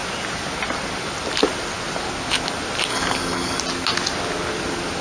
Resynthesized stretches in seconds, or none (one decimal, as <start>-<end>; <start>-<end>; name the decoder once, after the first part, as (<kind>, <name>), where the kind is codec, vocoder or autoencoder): 2.9-3.6 (codec, DAC)